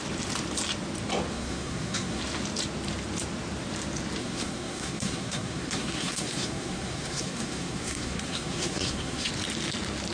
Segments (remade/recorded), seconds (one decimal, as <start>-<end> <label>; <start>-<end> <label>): 0.0-1.3 recorded; 1.3-2.2 remade; 2.2-4.2 recorded; 4.2-9.3 remade; 9.3-10.1 recorded